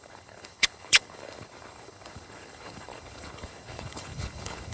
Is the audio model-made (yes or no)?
yes